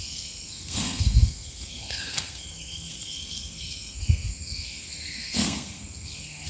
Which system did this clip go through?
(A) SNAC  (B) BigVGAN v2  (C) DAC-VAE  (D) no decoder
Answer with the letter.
A